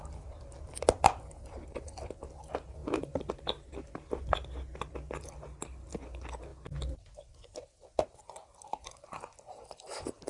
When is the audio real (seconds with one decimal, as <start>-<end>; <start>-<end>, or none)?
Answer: 0.0-10.3